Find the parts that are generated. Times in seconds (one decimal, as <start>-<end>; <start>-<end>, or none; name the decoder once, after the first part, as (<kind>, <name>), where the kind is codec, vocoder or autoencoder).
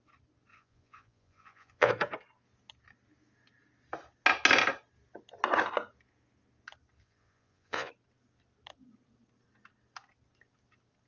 0.5-1.9 (vocoder, Vocos); 7.0-7.9